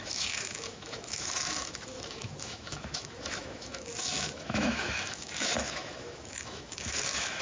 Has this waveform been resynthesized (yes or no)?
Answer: yes